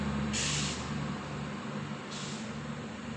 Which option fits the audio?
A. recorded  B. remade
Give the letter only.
A